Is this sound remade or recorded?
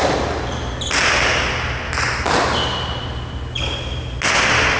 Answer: recorded